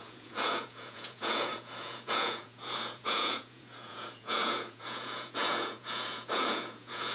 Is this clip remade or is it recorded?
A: remade